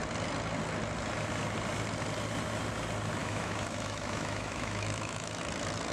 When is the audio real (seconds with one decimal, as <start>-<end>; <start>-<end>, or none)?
0.0-3.2; 5.4-5.9